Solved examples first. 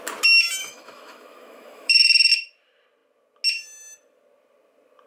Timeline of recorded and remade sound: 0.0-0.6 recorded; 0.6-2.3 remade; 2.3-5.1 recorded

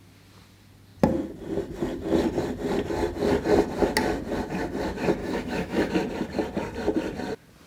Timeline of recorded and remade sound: 0.0-5.2 recorded; 5.2-5.9 remade; 5.9-7.7 recorded

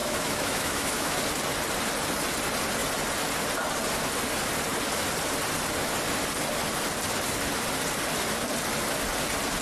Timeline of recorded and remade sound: 0.0-1.2 remade; 1.2-9.6 recorded

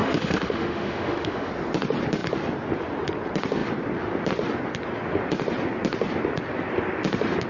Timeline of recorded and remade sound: 0.0-1.5 remade; 1.5-7.5 recorded

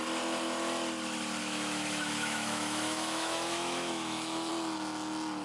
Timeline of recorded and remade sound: 0.0-1.4 recorded; 1.4-4.5 remade; 4.5-5.4 recorded

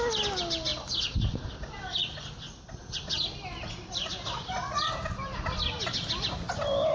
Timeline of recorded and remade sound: 0.0-6.9 recorded